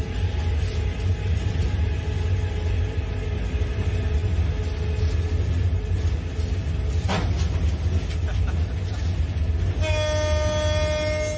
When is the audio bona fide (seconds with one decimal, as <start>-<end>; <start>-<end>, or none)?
0.0-11.4